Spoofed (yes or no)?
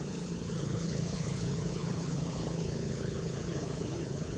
yes